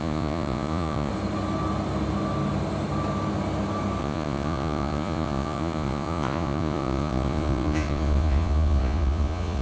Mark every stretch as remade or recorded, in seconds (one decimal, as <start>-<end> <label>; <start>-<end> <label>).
0.0-1.1 remade; 1.1-4.0 recorded; 4.0-9.6 remade